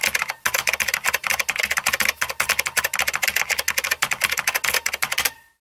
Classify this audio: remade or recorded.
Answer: recorded